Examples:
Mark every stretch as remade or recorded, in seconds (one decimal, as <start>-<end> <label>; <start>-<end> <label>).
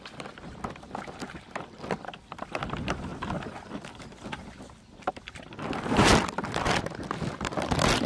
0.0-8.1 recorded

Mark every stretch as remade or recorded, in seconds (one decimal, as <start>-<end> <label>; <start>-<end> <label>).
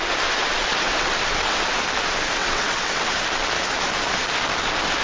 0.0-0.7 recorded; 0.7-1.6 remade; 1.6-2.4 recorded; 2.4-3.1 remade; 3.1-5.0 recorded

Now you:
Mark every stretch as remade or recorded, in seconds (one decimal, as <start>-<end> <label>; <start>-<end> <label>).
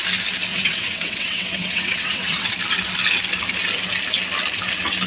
0.0-0.5 recorded; 0.5-2.5 remade; 2.5-5.1 recorded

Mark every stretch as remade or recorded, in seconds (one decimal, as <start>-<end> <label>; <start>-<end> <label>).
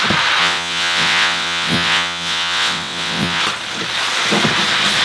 0.0-0.4 recorded; 0.4-3.4 remade; 3.4-5.0 recorded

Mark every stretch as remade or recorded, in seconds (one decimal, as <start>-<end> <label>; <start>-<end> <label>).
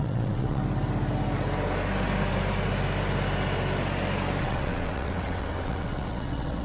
0.0-0.6 remade; 0.6-4.4 recorded; 4.4-6.6 remade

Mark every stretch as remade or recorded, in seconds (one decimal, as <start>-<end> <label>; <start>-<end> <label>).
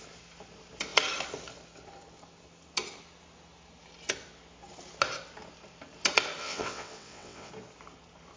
0.0-6.4 recorded; 6.4-7.5 remade; 7.5-8.4 recorded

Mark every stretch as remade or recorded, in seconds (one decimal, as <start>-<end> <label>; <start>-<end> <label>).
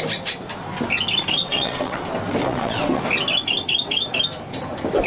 0.0-1.4 recorded; 1.4-2.0 remade; 2.0-2.4 recorded; 2.4-3.0 remade; 3.0-5.1 recorded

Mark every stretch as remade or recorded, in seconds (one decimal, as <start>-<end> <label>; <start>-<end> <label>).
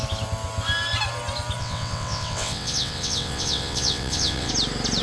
0.0-1.6 recorded; 1.6-4.5 remade; 4.5-5.0 recorded